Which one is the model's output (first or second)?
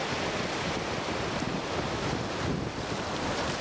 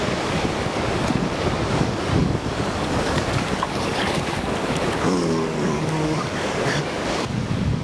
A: second